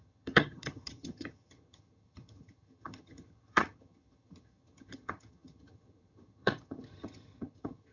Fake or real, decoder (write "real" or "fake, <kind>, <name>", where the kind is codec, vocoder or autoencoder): fake, vocoder, HiFi-GAN